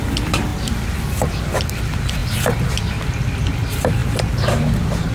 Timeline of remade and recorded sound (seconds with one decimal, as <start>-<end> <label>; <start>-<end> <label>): 0.0-4.0 recorded; 4.0-5.1 remade